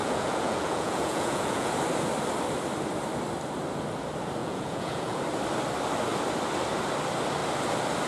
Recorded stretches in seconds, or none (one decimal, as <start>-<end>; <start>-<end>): 1.7-4.4; 5.2-8.1